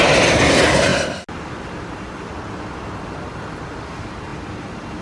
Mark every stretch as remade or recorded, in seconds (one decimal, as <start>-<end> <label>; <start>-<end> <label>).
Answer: 0.0-5.0 recorded